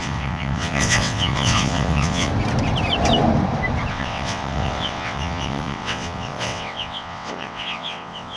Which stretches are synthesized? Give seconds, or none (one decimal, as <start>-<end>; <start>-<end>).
0.0-2.3; 3.9-8.4